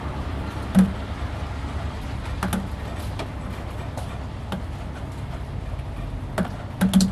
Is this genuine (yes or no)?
yes